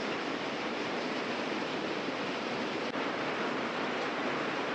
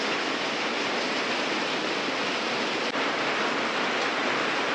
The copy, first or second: first